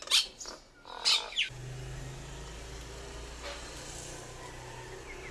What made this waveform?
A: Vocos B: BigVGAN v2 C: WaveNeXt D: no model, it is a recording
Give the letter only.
D